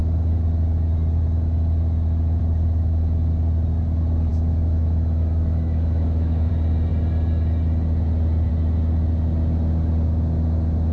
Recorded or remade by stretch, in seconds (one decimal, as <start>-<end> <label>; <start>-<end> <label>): 0.0-4.3 recorded; 4.3-6.5 remade; 6.5-10.9 recorded